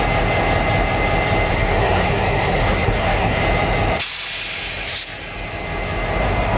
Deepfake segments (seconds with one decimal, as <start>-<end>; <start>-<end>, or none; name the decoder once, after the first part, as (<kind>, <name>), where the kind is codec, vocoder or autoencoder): 1.5-3.4 (codec, SNAC)